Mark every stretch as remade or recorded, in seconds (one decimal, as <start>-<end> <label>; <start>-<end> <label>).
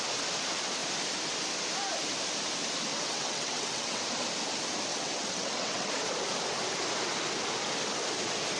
0.0-2.9 recorded; 2.9-4.0 remade; 4.0-4.9 recorded; 4.9-5.9 remade; 5.9-8.6 recorded